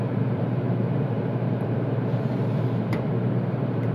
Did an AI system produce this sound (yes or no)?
yes